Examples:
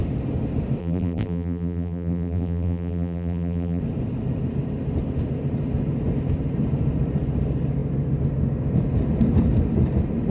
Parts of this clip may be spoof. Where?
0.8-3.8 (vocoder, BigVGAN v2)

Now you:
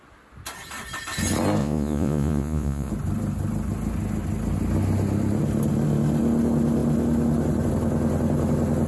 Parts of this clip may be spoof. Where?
1.6-2.9 (vocoder, Vocos)

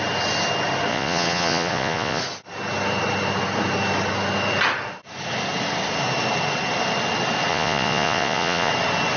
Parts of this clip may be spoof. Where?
0.9-2.2 (vocoder, Vocos); 7.5-8.7

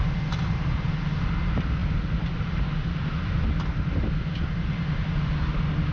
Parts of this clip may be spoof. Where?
none